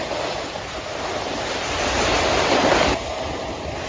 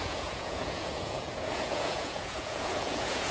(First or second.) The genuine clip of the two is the first